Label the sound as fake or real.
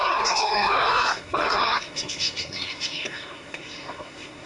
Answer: fake